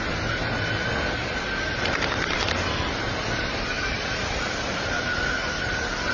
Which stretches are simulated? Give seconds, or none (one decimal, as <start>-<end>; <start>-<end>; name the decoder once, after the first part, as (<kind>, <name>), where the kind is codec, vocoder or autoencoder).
none